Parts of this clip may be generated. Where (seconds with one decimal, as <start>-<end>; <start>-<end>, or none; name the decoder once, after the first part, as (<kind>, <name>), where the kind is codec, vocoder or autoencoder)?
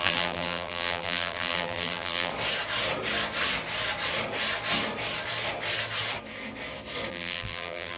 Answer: 0.0-2.3 (vocoder, BigVGAN v2); 7.1-8.0